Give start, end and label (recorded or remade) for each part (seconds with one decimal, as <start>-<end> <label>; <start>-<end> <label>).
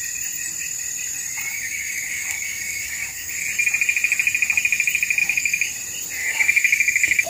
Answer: 0.0-1.5 recorded; 1.5-3.3 remade; 3.3-5.2 recorded; 5.2-5.7 remade; 5.7-6.2 recorded; 6.2-7.3 remade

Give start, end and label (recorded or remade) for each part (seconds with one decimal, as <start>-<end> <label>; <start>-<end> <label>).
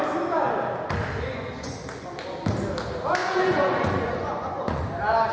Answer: 0.0-1.3 recorded; 1.3-2.2 remade; 2.2-3.2 recorded; 3.2-4.8 remade; 4.8-5.3 recorded